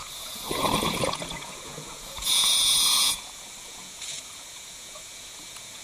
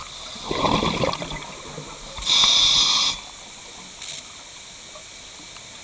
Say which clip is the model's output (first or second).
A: first